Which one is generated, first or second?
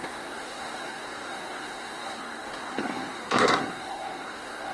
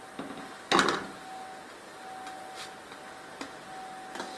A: first